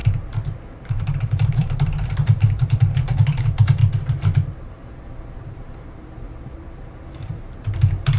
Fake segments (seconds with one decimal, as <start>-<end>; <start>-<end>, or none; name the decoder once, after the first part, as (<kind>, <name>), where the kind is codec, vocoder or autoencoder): 1.0-3.8 (vocoder, BigVGAN v2); 4.6-8.2